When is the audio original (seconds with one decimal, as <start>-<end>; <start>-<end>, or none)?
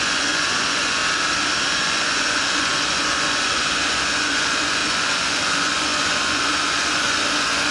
1.0-1.7